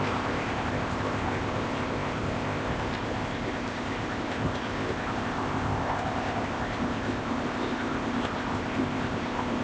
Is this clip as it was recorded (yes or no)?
no